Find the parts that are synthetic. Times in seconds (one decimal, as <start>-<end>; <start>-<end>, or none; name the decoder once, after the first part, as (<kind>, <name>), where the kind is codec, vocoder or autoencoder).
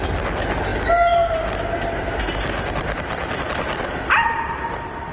none